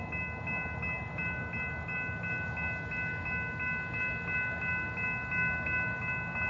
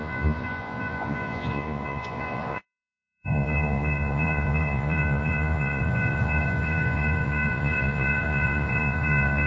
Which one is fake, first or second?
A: second